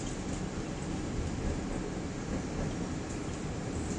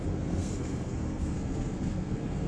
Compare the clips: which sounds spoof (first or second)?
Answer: second